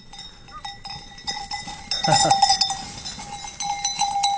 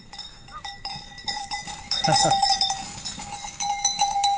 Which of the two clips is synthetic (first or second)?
second